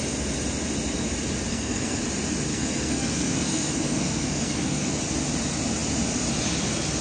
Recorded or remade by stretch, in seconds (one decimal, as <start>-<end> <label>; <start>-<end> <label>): 0.0-1.5 recorded; 1.5-2.0 remade; 2.0-2.5 recorded; 2.5-5.0 remade; 5.0-7.0 recorded